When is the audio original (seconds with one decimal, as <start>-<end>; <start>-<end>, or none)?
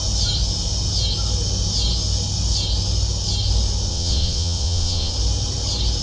0.0-3.9; 5.1-6.0